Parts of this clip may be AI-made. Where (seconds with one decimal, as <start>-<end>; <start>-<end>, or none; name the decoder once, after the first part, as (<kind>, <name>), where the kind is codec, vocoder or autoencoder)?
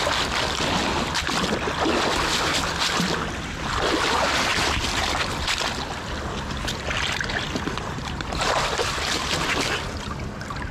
7.9-8.6 (vocoder, BigVGAN v2)